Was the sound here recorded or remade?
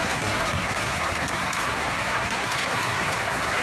remade